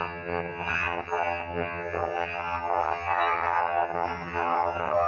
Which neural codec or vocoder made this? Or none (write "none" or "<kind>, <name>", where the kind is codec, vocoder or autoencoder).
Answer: vocoder, HiFi-GAN